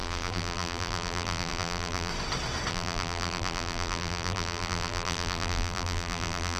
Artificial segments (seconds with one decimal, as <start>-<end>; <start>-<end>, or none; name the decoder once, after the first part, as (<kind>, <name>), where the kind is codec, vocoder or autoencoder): 0.0-2.1 (vocoder, BigVGAN v2); 2.7-6.6